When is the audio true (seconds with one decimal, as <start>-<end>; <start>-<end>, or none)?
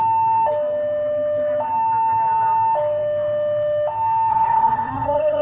0.0-4.3